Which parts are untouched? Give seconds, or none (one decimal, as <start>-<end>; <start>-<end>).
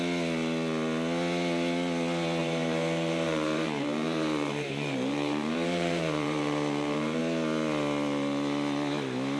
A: 0.0-2.4; 7.2-9.4